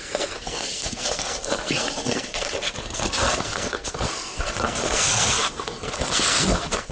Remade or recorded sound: remade